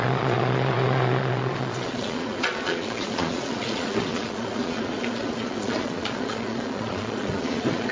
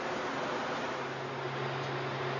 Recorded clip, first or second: second